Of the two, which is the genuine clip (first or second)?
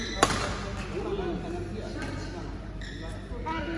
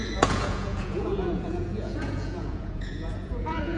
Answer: first